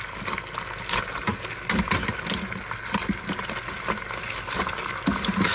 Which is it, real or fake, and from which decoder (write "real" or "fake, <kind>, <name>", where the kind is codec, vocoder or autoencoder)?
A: real